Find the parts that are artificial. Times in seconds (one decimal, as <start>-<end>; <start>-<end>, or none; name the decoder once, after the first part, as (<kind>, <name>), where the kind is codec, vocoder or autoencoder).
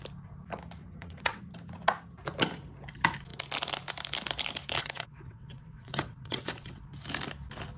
0.8-1.4 (vocoder, WaveNeXt); 4.8-6.8